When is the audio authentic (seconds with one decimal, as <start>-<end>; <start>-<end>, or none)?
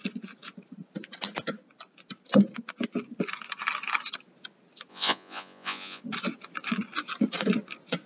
0.0-4.9; 6.0-8.1